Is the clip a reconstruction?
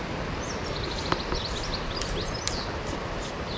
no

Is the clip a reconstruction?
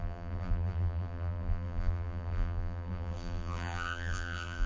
yes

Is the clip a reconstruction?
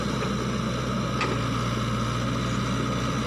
no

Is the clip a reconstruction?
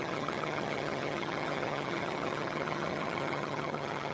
yes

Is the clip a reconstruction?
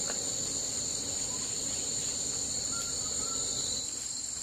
no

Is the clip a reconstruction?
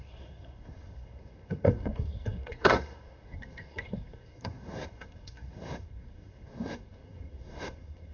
yes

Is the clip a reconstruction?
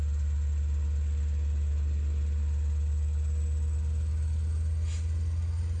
no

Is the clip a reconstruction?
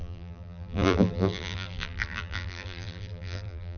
yes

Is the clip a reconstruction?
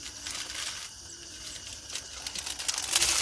no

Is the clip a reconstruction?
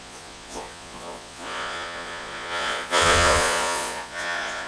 yes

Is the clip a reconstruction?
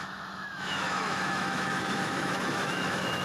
yes